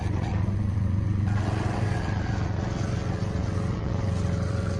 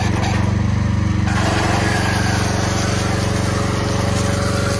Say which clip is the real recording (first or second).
second